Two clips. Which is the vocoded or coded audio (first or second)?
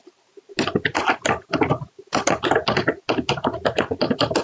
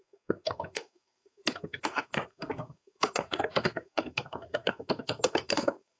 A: second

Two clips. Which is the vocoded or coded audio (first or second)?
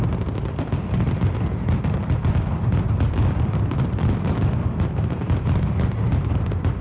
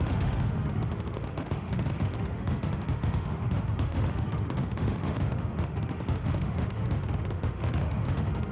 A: second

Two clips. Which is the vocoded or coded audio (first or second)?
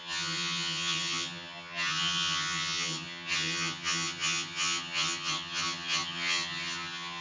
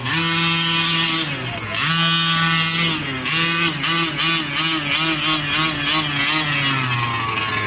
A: first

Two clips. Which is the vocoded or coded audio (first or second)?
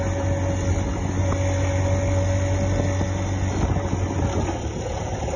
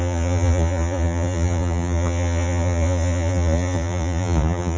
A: second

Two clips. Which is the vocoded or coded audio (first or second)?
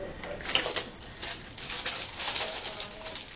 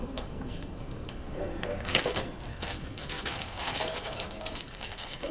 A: second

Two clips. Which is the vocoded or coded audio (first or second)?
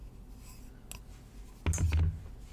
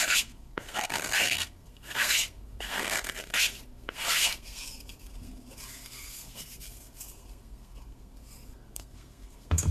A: second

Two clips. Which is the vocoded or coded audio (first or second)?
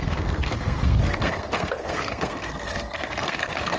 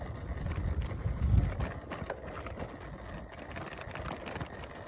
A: first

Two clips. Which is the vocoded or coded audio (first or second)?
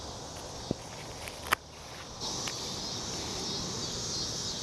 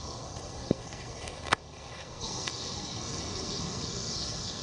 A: second